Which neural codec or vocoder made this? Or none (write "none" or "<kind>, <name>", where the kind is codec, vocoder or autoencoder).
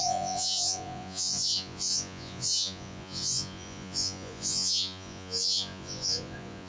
vocoder, Vocos